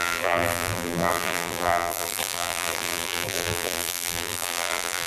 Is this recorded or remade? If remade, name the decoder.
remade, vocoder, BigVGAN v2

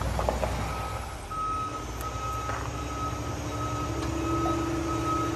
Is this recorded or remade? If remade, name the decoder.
recorded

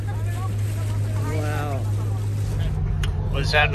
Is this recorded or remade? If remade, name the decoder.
recorded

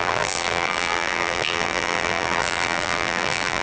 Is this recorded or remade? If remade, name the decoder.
remade, vocoder, BigVGAN v2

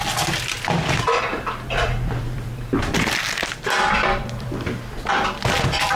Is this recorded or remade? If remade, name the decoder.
remade, vocoder, BigVGAN v2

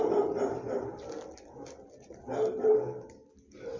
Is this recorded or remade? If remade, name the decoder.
recorded